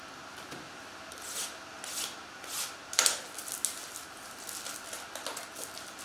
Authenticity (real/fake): real